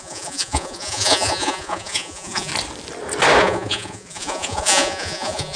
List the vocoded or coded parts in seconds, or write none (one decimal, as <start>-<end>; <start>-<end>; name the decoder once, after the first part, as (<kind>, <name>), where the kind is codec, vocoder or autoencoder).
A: 0.0-2.5 (vocoder, Vocos); 3.4-5.6